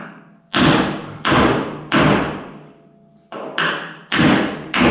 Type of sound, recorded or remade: recorded